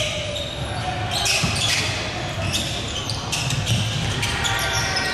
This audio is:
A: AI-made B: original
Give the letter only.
B